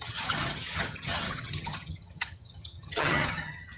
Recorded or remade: remade